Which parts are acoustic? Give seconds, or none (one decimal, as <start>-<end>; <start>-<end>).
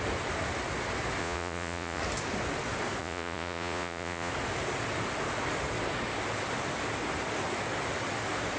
0.0-1.2; 2.0-3.0; 4.3-8.6